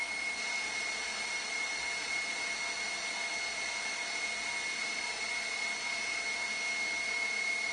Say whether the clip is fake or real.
real